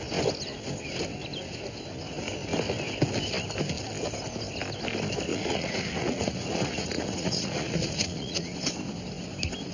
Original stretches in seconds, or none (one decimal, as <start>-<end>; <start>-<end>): 0.0-5.3; 8.6-9.7